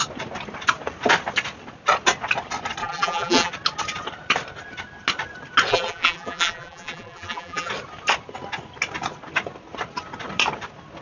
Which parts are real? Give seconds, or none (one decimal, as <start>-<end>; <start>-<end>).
0.0-2.8; 3.5-5.7; 7.7-11.0